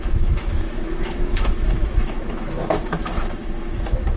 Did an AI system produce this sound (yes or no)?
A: yes